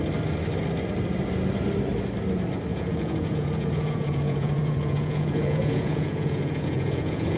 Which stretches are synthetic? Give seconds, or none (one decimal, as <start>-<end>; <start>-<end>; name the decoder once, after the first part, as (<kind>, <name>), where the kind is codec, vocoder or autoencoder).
2.7-7.4 (vocoder, Vocos)